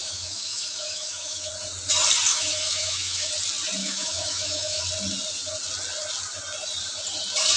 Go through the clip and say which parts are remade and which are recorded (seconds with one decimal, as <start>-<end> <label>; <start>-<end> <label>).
0.0-1.5 remade; 1.5-2.3 recorded; 2.3-3.3 remade; 3.3-3.8 recorded; 3.8-4.8 remade; 4.8-7.6 recorded